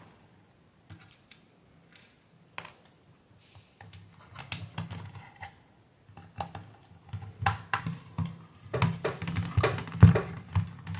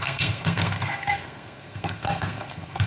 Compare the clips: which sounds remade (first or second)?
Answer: second